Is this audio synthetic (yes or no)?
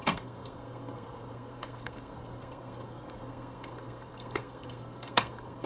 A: yes